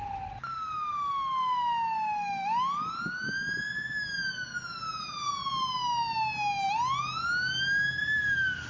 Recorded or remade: recorded